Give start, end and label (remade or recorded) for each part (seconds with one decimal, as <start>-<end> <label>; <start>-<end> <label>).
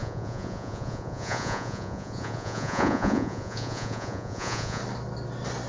0.0-4.8 remade; 4.8-5.7 recorded